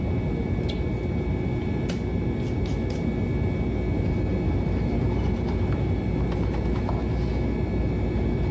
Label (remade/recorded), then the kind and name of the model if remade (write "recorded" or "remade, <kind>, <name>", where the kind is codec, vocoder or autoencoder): recorded